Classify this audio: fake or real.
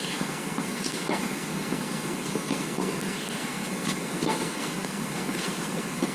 fake